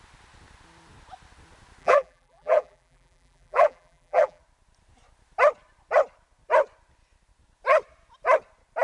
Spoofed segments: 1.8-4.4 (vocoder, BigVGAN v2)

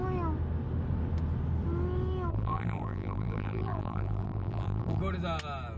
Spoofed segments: 2.3-5.0 (vocoder, BigVGAN v2)